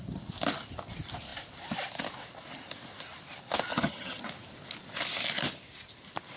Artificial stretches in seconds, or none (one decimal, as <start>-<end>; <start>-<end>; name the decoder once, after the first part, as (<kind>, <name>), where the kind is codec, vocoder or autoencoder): 3.7-4.2 (vocoder, HiFi-GAN)